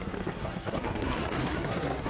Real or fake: fake